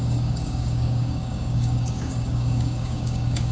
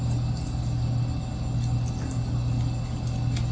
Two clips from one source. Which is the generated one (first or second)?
first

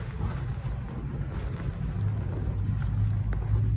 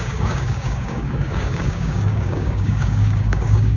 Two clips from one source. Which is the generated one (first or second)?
second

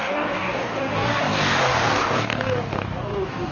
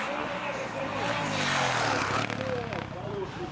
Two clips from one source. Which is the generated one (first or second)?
first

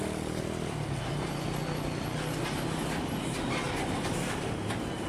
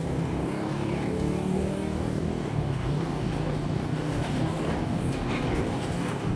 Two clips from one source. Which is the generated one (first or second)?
second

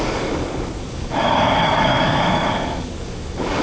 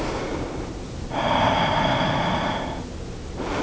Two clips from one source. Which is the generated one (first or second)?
first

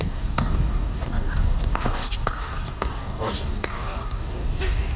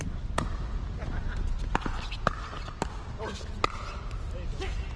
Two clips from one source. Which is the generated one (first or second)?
first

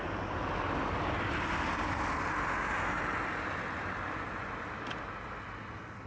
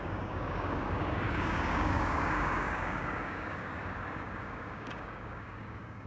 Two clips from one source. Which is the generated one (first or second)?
second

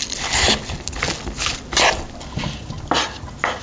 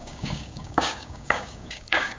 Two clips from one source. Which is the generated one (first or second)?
second